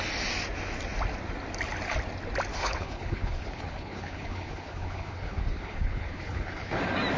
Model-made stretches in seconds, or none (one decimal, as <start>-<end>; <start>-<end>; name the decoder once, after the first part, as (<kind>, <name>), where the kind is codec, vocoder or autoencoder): 2.5-6.8 (codec, HILCodec)